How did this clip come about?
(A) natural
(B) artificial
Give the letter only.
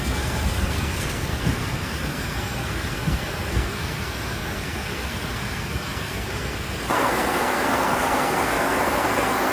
B